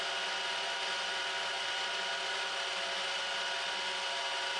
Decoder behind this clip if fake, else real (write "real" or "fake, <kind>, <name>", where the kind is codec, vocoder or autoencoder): real